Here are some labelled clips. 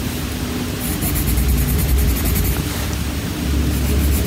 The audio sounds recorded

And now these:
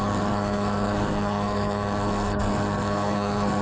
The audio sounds remade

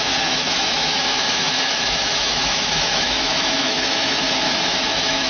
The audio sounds remade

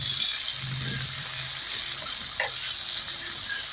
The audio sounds recorded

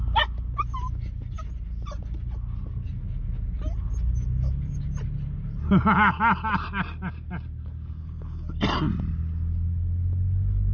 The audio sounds recorded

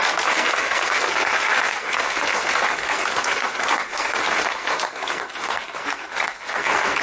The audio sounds remade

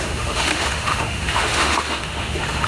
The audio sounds remade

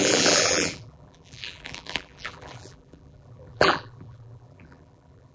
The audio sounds remade